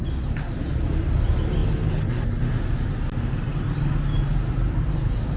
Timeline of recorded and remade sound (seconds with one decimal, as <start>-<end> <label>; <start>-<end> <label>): 0.0-5.4 recorded